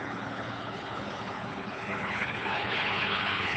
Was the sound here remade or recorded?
remade